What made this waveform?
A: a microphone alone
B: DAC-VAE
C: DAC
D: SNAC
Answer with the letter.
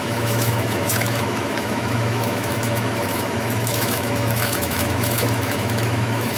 B